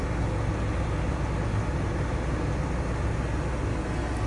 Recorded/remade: recorded